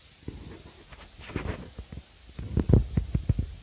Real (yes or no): yes